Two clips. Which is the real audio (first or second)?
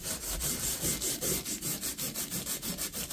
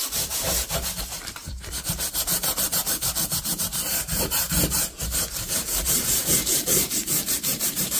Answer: first